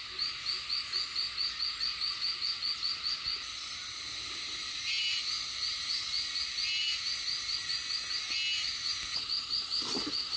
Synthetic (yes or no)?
no